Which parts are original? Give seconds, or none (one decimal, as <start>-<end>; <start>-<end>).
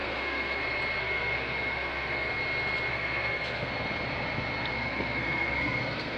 0.6-1.0; 2.3-2.9; 3.7-4.7